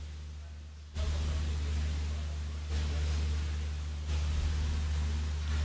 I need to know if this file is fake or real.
real